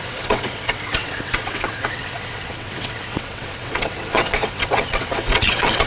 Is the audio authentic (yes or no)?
no